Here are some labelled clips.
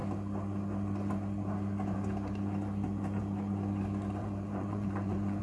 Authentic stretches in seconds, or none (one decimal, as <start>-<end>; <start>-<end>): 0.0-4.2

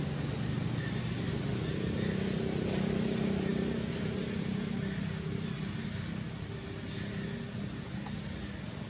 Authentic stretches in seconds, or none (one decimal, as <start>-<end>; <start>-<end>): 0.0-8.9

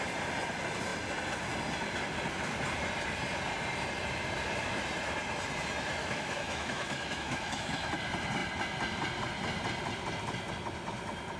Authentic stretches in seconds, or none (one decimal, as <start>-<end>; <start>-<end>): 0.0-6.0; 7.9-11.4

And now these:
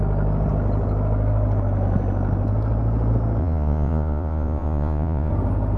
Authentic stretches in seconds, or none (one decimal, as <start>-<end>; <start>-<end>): 0.0-3.4; 5.3-5.8

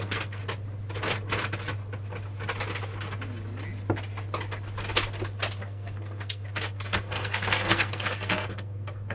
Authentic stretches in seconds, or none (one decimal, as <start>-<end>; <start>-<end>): 0.4-5.6

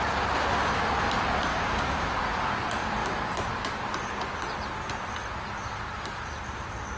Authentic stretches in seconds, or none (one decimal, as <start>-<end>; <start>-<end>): 0.0-1.5; 2.2-7.0